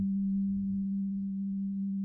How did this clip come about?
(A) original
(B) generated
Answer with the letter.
B